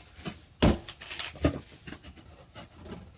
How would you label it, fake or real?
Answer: real